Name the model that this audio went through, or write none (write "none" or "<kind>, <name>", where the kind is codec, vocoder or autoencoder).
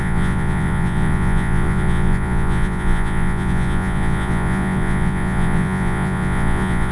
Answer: vocoder, Vocos